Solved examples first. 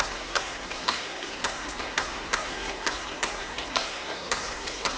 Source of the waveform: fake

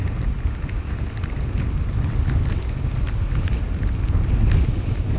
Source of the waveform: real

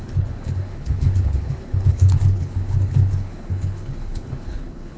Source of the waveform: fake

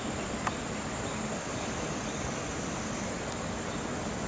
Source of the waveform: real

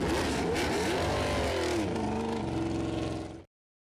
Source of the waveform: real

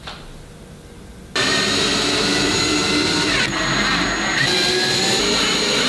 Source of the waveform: real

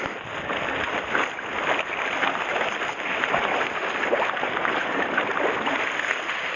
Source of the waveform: real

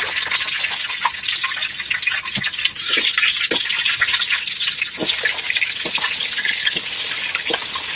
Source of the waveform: real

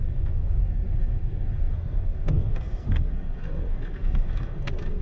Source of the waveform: fake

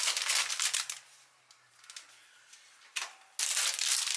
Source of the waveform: real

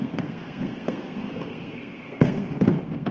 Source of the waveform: fake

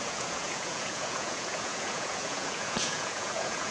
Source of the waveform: fake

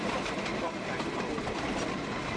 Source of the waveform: real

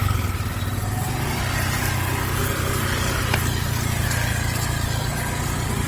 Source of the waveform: real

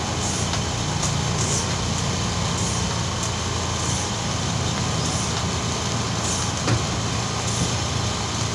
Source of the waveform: real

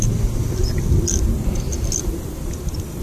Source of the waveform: real